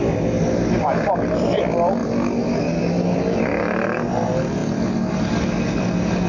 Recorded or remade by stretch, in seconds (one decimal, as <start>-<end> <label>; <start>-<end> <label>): 0.0-6.3 recorded